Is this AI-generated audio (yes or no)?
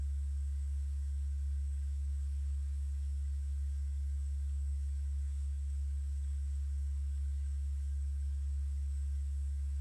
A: yes